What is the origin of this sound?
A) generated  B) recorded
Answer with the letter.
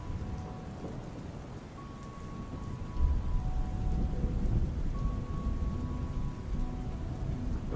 B